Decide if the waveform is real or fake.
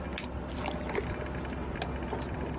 real